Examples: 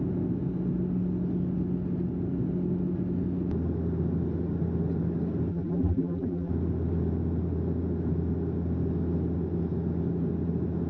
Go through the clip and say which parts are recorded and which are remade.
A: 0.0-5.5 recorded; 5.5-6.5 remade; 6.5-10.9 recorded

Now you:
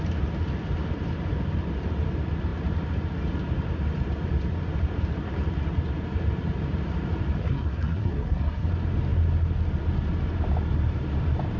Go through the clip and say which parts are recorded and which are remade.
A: 0.0-7.4 recorded; 7.4-8.7 remade; 8.7-11.6 recorded

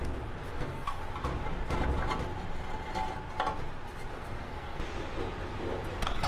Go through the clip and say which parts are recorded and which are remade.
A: 0.0-0.5 recorded; 0.5-1.0 remade; 1.0-4.1 recorded; 4.1-4.8 remade; 4.8-6.3 recorded